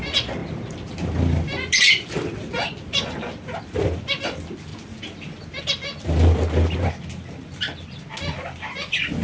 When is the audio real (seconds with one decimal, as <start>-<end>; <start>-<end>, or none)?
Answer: 0.0-9.2